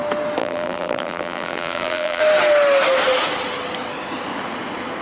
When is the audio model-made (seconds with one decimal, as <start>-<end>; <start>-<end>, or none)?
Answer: 0.4-2.2